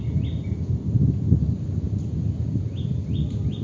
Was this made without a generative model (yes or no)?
yes